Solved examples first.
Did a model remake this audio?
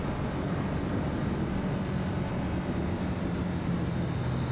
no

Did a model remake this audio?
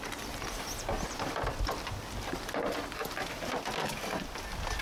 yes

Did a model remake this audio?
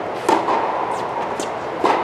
no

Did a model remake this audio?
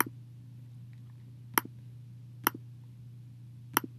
no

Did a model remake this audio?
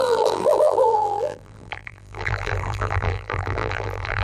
yes